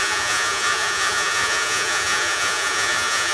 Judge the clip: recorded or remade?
remade